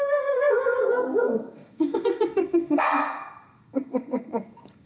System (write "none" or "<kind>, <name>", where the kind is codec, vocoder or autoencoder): codec, SNAC